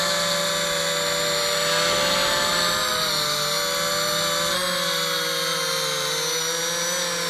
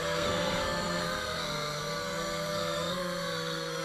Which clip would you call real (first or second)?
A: first